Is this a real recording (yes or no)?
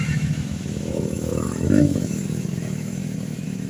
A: no